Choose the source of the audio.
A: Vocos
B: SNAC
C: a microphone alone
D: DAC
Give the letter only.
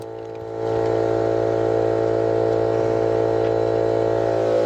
C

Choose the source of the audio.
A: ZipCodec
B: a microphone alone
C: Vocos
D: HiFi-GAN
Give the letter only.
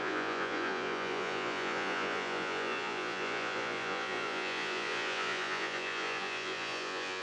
C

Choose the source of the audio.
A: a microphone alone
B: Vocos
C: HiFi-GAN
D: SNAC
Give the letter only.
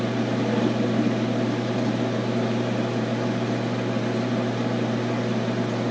A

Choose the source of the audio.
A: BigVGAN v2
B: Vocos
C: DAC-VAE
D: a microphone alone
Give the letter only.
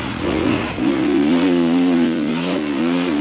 B